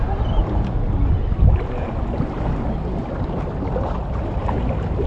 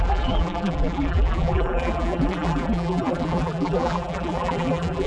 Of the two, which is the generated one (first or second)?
second